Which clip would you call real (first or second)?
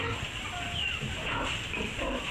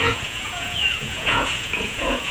first